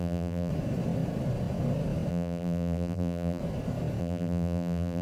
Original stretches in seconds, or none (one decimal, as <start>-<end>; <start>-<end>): 0.5-2.1; 3.4-4.0